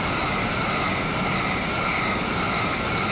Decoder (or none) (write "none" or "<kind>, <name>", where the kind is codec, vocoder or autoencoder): none